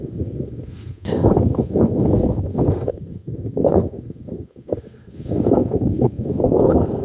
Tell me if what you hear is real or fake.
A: fake